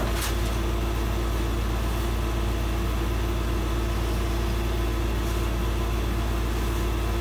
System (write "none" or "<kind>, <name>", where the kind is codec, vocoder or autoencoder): none